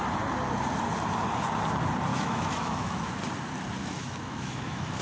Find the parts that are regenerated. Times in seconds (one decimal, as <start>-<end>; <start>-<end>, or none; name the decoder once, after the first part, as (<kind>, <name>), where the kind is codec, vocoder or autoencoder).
2.1-3.2 (autoencoder, DAC-VAE); 3.8-5.0